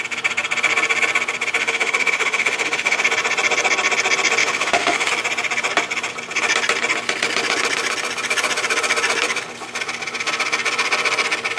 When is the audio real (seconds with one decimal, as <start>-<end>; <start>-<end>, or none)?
0.0-1.6; 3.0-4.4; 5.1-11.6